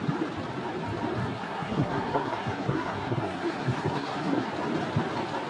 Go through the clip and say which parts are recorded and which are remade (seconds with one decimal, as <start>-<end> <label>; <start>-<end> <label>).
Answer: 0.0-1.2 recorded; 1.2-4.5 remade; 4.5-5.5 recorded